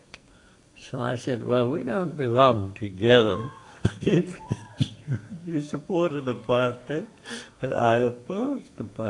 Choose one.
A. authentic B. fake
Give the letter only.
B